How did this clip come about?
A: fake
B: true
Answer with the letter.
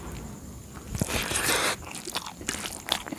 B